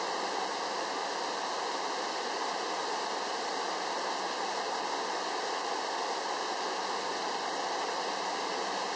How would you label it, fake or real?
real